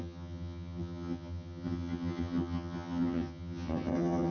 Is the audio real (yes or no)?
no